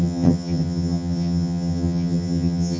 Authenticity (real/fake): fake